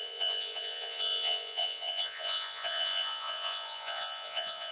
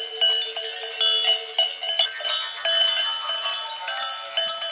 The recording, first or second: second